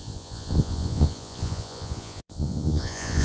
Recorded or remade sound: remade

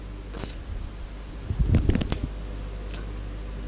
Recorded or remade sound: recorded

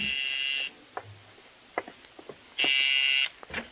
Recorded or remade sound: recorded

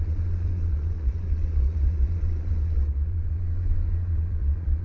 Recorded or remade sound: remade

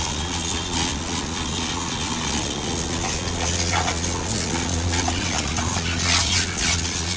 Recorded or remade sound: remade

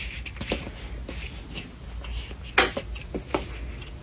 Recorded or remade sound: recorded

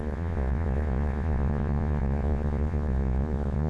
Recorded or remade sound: remade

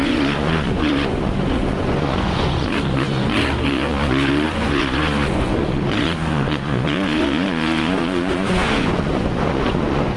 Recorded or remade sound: remade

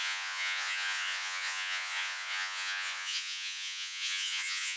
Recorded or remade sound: remade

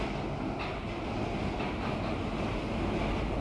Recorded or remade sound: recorded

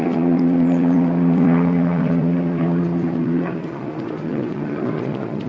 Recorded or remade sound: remade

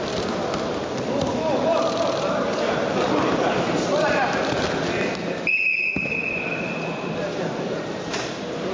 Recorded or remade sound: recorded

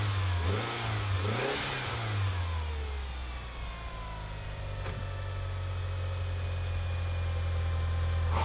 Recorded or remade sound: recorded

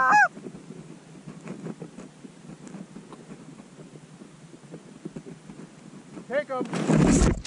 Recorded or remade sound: recorded